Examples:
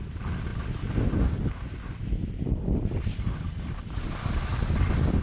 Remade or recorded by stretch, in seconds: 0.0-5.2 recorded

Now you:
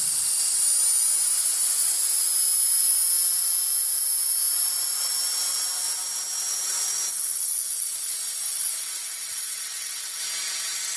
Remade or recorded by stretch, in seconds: 0.0-7.1 recorded; 7.1-10.2 remade; 10.2-11.0 recorded

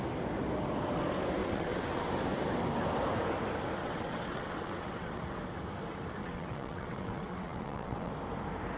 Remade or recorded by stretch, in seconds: 0.0-1.4 recorded; 1.4-2.1 remade; 2.1-3.8 recorded; 3.8-5.2 remade; 5.2-6.2 recorded; 6.2-8.1 remade; 8.1-8.8 recorded

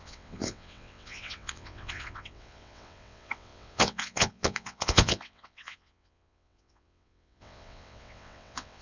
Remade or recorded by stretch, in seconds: 0.0-8.8 remade

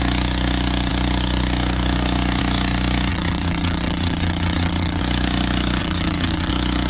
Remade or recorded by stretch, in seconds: 0.0-3.1 recorded; 3.1-5.0 remade; 5.0-5.8 recorded; 5.8-6.5 remade; 6.5-6.9 recorded